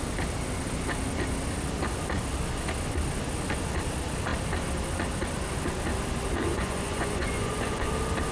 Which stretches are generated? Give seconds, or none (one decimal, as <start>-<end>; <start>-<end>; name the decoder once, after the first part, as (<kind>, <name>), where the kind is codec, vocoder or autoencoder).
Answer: 6.5-7.9 (vocoder, Vocos)